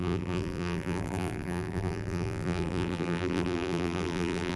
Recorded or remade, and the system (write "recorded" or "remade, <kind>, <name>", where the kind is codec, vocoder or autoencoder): remade, vocoder, BigVGAN v2